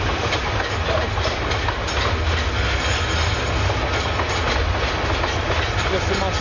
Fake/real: real